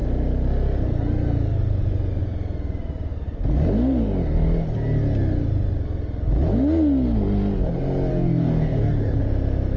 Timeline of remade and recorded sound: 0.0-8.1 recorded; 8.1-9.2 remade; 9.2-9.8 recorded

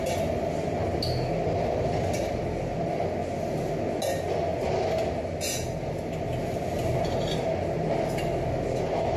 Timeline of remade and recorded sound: 0.0-9.2 recorded

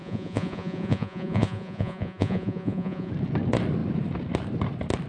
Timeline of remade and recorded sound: 0.0-3.1 remade; 3.1-5.1 recorded

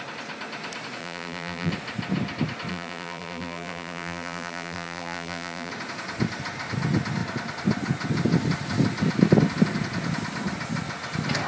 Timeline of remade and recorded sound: 0.0-1.0 recorded; 1.0-1.7 remade; 1.7-2.7 recorded; 2.7-5.7 remade; 5.7-11.5 recorded

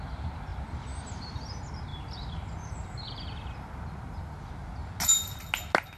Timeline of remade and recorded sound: 0.0-1.9 recorded; 1.9-4.5 remade; 4.5-6.0 recorded

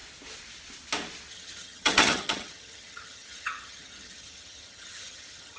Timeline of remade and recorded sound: 0.0-1.3 recorded; 1.3-5.6 remade

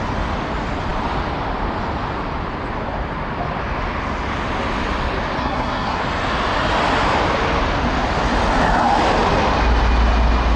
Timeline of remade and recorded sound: 0.0-5.4 recorded; 5.4-6.0 remade; 6.0-10.6 recorded